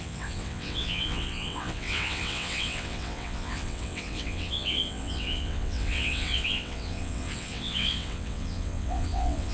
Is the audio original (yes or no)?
no